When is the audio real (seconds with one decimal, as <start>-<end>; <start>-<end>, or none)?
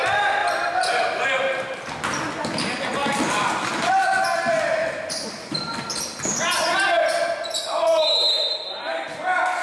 0.0-0.4; 1.9-3.0; 3.9-4.8; 5.9-9.6